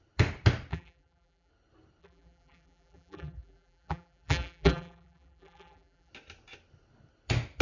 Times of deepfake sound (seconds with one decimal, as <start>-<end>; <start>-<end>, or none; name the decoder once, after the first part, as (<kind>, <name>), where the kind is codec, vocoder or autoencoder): 0.7-1.5 (vocoder, BigVGAN v2); 2.0-6.1

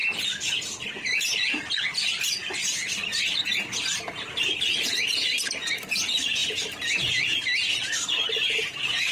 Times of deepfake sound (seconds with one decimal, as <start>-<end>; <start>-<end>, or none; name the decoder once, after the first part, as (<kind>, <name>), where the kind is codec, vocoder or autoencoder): 0.9-9.1 (vocoder, BigVGAN v2)

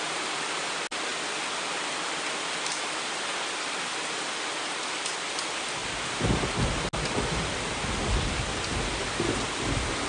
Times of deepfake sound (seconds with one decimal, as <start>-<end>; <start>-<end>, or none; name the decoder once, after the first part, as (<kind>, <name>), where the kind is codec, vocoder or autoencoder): none

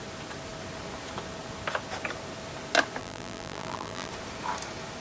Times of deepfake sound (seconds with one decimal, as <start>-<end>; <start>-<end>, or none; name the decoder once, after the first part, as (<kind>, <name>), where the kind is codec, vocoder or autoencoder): 3.0-4.1 (vocoder, BigVGAN v2)

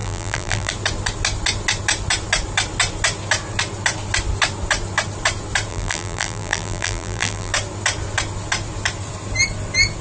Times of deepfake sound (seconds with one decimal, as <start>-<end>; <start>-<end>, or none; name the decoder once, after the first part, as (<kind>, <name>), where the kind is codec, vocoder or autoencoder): 0.0-0.7 (vocoder, BigVGAN v2); 5.7-7.5

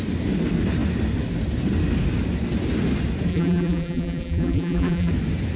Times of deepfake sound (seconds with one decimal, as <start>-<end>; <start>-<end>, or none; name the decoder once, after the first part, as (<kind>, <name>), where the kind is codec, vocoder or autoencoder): 3.3-5.1 (vocoder, BigVGAN v2)